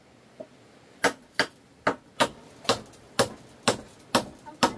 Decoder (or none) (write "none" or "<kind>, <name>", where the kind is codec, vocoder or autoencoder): none